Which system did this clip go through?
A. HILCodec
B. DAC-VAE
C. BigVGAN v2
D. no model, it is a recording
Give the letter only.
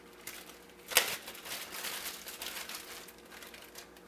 D